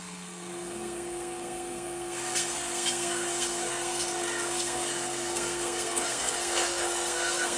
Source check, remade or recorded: remade